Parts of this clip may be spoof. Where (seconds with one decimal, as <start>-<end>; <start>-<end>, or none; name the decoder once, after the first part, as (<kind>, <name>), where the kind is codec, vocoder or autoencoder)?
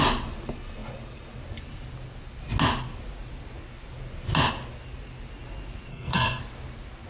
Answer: 5.9-6.4 (codec, SNAC)